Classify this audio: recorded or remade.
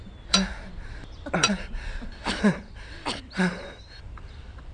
remade